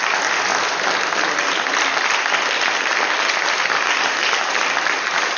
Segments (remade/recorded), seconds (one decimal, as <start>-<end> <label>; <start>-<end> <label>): 0.0-5.4 recorded